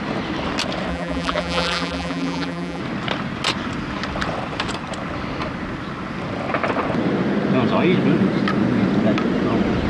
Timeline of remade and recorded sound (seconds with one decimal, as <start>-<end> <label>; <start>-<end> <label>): 0.0-0.9 recorded; 0.9-2.8 remade; 2.8-9.9 recorded